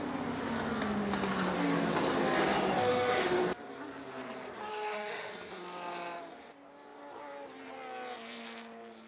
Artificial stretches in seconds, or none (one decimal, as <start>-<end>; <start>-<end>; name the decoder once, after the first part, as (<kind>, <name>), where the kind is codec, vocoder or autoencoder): 2.8-3.4 (autoencoder, DAC-VAE); 4.7-5.3